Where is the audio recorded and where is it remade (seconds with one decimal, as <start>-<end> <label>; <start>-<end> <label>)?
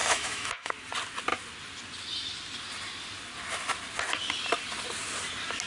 0.0-0.7 remade; 0.7-5.7 recorded